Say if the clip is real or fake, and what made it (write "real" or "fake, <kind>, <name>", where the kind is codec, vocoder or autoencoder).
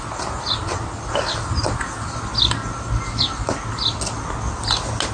real